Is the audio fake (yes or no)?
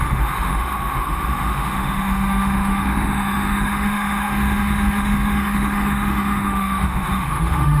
yes